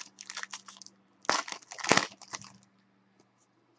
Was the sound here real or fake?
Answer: real